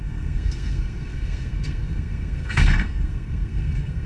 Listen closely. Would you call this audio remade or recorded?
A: remade